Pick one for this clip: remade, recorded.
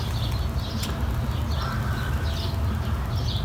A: recorded